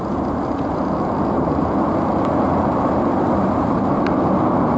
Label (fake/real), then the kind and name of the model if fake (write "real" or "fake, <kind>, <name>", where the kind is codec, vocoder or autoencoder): real